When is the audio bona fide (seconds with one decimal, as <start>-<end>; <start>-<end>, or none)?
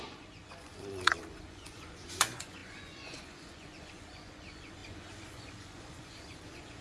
none